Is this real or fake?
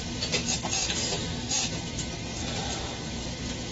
real